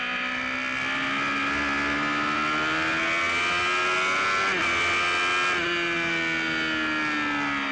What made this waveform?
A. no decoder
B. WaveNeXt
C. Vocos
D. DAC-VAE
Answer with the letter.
A